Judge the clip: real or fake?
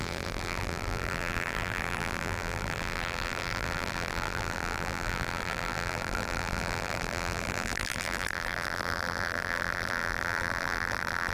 fake